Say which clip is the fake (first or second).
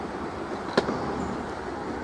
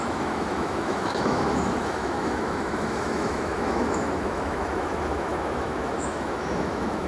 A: second